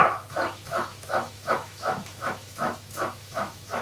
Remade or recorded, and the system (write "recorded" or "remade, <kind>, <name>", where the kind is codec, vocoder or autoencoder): remade, autoencoder, DAC-VAE